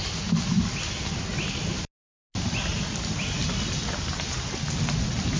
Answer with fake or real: real